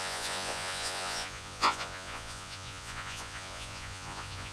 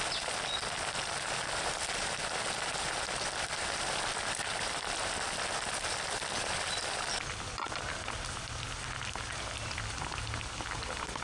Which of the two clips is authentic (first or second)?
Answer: second